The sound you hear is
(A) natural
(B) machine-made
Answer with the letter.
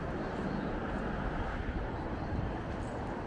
A